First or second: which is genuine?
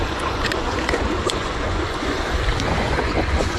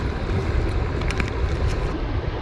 second